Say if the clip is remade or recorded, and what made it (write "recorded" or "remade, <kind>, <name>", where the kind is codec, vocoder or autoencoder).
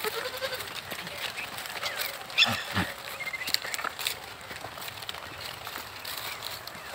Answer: remade, vocoder, BigVGAN v2